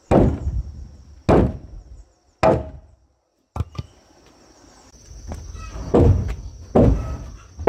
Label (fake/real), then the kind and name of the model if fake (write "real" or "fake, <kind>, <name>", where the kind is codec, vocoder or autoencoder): real